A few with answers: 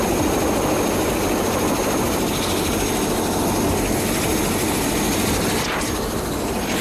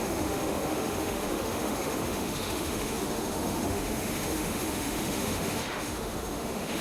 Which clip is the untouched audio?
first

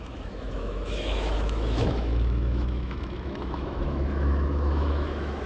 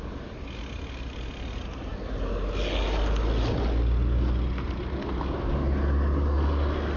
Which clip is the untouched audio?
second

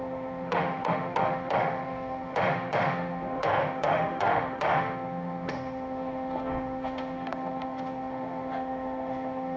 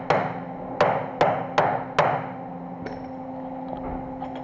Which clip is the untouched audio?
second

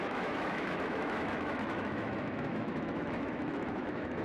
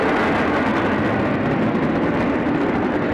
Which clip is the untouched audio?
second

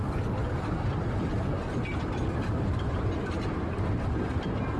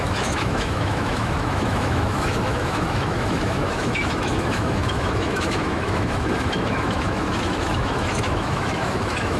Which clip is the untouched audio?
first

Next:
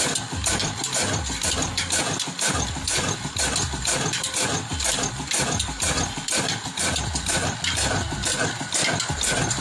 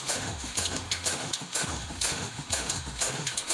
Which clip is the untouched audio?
first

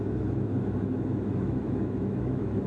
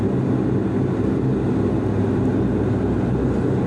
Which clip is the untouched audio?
second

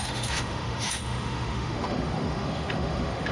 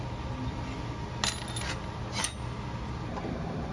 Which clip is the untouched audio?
second